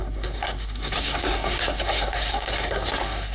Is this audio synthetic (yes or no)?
yes